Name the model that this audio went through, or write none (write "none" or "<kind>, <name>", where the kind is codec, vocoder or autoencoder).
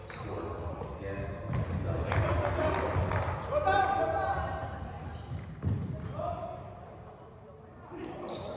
none